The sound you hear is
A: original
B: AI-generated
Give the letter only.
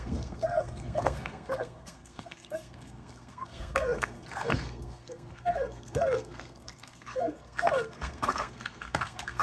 B